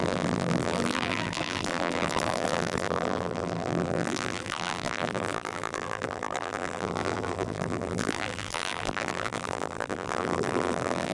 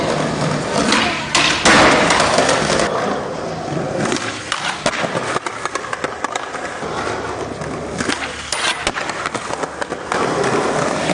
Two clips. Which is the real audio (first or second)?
second